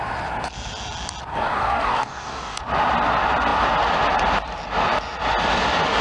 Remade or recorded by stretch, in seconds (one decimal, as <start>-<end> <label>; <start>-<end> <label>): 0.0-1.3 recorded; 1.3-2.6 remade; 2.6-6.0 recorded

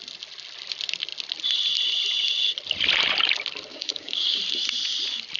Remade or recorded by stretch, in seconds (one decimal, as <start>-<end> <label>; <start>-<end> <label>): 0.0-3.7 recorded; 3.7-4.4 remade; 4.4-5.4 recorded